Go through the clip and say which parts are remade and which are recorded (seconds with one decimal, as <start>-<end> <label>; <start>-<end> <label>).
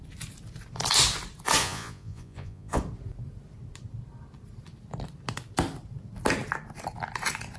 0.0-1.6 recorded; 1.6-2.8 remade; 2.8-7.6 recorded